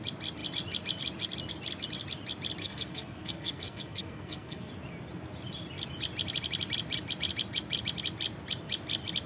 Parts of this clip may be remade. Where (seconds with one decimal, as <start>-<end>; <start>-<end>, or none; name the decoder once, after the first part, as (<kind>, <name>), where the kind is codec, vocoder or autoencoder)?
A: 2.6-4.7 (codec, SNAC)